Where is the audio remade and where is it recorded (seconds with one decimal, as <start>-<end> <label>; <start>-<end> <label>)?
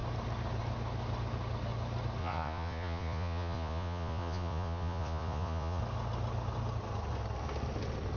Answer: 0.0-2.2 recorded; 2.2-5.8 remade; 5.8-8.2 recorded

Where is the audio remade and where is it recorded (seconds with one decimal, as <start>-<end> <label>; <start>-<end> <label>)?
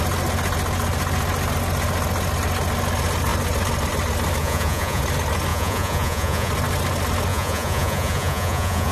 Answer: 0.0-4.4 recorded; 4.4-5.0 remade; 5.0-5.5 recorded; 5.5-6.5 remade; 6.5-7.3 recorded; 7.3-8.9 remade